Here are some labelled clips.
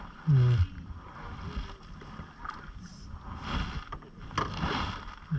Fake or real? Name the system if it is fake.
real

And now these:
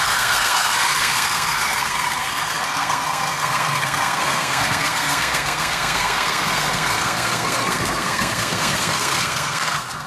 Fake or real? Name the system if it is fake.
fake, codec, SNAC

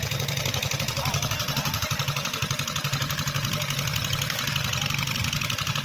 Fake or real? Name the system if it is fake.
real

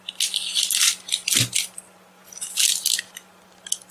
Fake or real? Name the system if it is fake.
real